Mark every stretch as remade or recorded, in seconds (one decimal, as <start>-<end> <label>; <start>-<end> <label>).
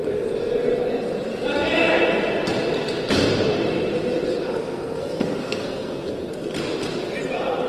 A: 0.0-4.6 recorded; 4.6-6.3 remade; 6.3-7.7 recorded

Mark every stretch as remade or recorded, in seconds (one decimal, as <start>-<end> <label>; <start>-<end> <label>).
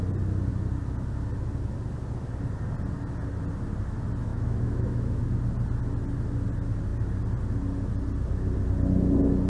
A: 0.0-4.3 recorded; 4.3-5.2 remade; 5.2-9.5 recorded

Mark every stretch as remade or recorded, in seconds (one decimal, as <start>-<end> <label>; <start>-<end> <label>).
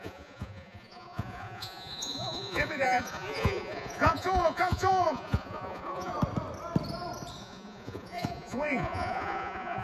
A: 0.0-6.1 remade; 6.1-7.4 recorded; 7.4-9.8 remade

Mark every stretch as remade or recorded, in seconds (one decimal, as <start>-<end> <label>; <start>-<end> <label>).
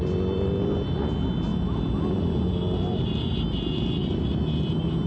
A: 0.0-5.1 recorded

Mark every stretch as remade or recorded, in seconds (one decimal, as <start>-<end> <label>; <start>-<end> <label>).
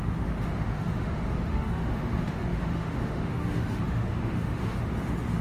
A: 0.0-5.4 remade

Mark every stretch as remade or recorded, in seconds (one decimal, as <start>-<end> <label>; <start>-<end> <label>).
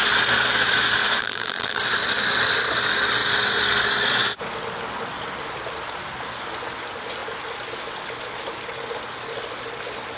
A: 0.0-1.2 recorded; 1.2-1.8 remade; 1.8-10.2 recorded